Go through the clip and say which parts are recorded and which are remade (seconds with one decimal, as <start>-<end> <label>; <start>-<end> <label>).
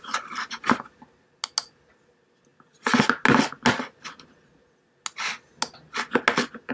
0.0-6.7 recorded